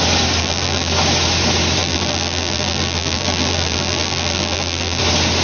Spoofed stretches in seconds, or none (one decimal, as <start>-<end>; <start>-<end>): 0.4-0.9; 1.8-5.0